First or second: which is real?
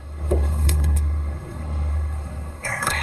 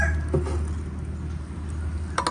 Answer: second